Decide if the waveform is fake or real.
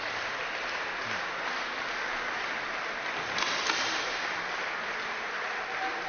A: real